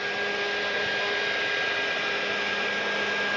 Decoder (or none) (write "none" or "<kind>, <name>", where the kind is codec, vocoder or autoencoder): none